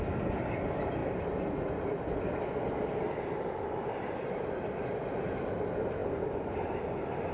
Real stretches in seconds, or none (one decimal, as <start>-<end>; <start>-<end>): 0.0-7.3